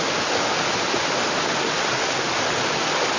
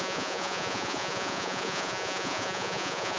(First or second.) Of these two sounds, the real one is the first